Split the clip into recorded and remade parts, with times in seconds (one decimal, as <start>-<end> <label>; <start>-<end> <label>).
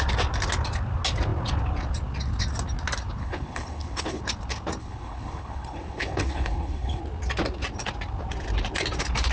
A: 0.0-3.2 recorded; 3.2-4.2 remade; 4.2-4.8 recorded; 4.8-7.0 remade; 7.0-9.3 recorded